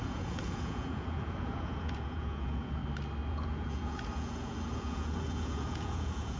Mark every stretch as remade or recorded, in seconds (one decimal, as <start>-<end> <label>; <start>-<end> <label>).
0.0-2.8 remade; 2.8-3.3 recorded; 3.3-6.4 remade